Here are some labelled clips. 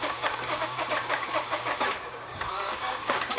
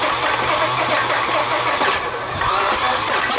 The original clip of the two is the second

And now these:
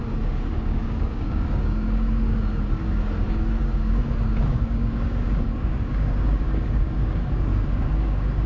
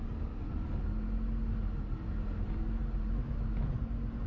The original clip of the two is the second